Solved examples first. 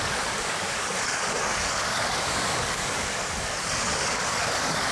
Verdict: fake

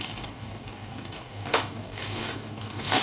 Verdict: fake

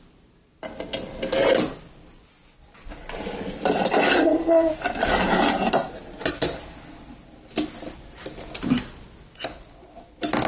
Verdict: real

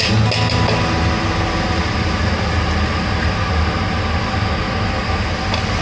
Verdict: real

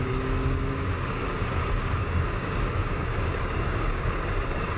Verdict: fake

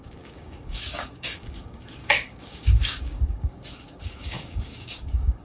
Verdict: fake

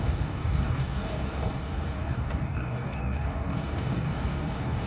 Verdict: fake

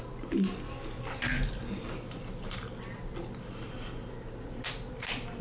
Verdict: real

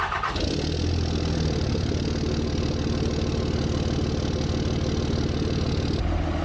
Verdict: real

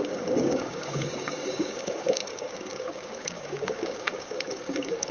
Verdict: fake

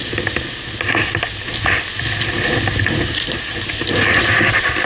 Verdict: real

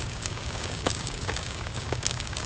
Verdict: fake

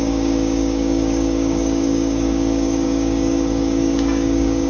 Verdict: fake